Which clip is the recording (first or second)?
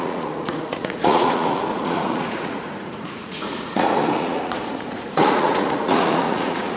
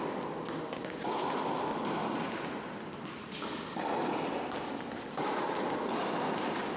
second